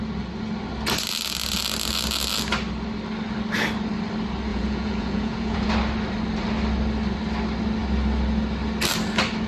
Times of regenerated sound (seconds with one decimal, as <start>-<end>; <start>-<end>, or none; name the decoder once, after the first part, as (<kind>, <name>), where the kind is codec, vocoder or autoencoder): 4.5-5.7 (vocoder, Vocos)